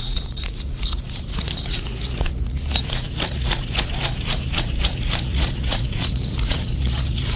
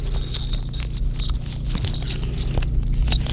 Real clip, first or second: second